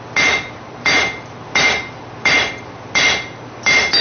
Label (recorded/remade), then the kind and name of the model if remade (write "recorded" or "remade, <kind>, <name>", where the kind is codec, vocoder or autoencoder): recorded